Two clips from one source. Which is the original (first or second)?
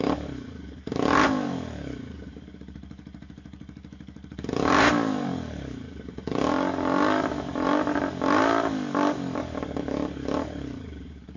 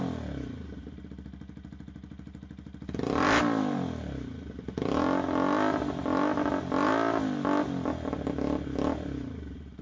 second